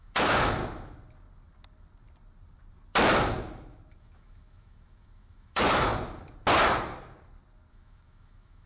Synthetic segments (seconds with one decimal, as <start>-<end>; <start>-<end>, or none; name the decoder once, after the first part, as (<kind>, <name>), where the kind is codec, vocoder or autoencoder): 0.0-0.6 (autoencoder, DAC-VAE); 4.0-5.9; 7.7-8.7